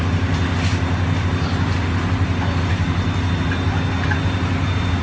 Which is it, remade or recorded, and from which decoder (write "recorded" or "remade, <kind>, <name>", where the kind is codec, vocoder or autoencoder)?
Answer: recorded